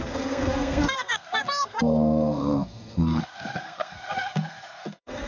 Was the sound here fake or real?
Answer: fake